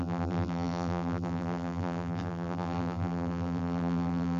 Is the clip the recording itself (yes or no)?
no